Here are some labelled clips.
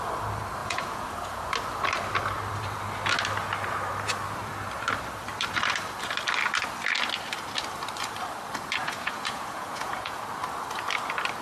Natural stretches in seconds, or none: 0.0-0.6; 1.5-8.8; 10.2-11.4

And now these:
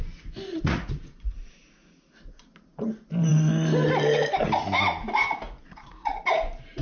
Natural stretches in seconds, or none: 0.0-0.5; 1.6-5.6; 6.2-6.8

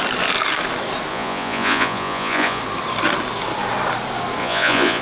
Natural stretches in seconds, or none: 0.0-1.1; 2.6-4.4

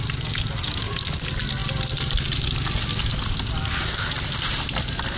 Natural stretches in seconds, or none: 0.0-5.2

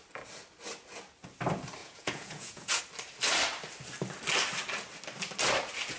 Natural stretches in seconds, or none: 0.0-1.8; 2.8-6.0